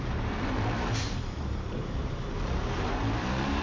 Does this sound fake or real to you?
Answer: fake